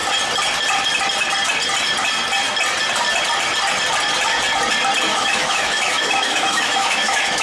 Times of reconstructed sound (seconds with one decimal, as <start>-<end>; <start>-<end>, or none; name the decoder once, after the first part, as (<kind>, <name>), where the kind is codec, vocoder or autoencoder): 5.1-7.4 (autoencoder, DAC-VAE)